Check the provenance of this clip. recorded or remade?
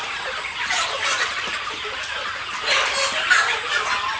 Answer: recorded